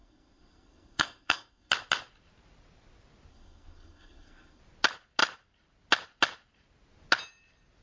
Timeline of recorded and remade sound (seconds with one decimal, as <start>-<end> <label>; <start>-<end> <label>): 0.0-1.7 remade; 1.7-3.3 recorded; 3.3-4.6 remade; 4.6-7.8 recorded